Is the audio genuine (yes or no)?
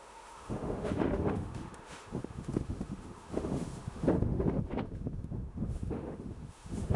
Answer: no